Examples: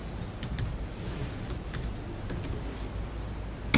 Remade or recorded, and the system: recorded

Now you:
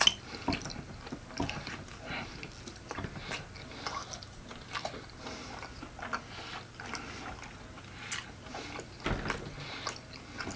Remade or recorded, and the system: recorded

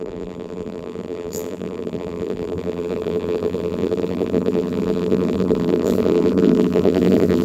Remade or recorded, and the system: remade, vocoder, BigVGAN v2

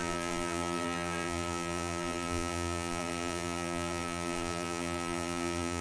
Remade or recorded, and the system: remade, vocoder, BigVGAN v2